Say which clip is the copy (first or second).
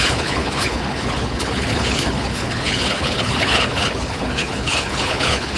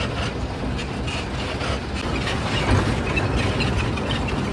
first